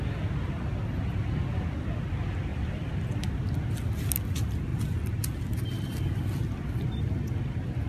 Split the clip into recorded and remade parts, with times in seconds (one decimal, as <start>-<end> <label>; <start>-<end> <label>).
0.0-2.5 recorded; 2.5-3.7 remade; 3.7-7.9 recorded